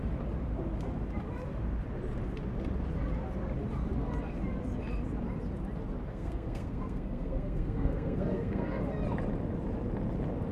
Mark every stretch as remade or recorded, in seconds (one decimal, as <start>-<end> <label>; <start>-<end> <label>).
0.0-6.1 recorded; 6.1-8.8 remade; 8.8-10.5 recorded